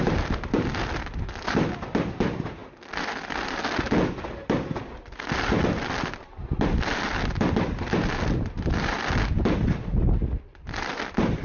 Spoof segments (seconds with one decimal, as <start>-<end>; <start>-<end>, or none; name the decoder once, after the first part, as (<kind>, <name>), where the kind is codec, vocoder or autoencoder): none